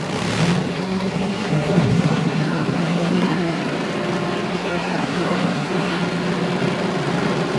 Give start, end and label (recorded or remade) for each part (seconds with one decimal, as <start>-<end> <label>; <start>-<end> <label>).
0.0-0.7 recorded; 0.7-3.6 remade; 3.6-4.5 recorded; 4.5-6.0 remade; 6.0-7.6 recorded